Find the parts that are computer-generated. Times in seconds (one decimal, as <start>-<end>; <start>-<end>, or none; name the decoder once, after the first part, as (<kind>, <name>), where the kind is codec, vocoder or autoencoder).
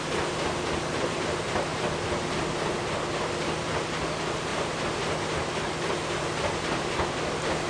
none